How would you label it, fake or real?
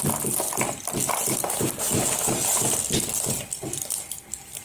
real